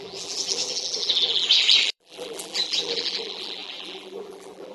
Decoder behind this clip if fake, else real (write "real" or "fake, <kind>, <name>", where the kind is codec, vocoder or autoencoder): fake, vocoder, BigVGAN v2